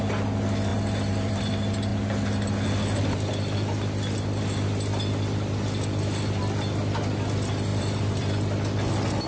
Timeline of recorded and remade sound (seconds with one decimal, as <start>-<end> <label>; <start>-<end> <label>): 0.0-0.7 recorded; 0.7-1.4 remade; 1.4-7.7 recorded; 7.7-8.3 remade; 8.3-9.3 recorded